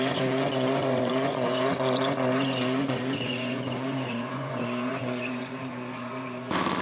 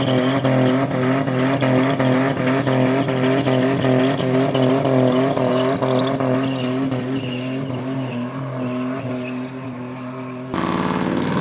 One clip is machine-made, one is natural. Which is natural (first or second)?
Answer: second